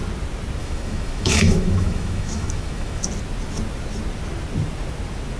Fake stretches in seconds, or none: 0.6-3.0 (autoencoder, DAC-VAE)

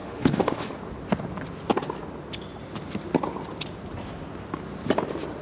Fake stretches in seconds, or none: 0.0-0.7 (autoencoder, DAC-VAE)

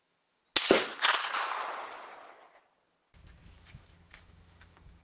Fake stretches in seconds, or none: 0.0-0.4 (autoencoder, DAC-VAE); 3.4-5.0

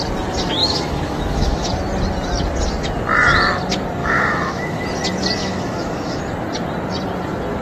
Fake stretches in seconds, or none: 0.6-1.7 (autoencoder, DAC-VAE); 4.0-4.8; 5.4-6.2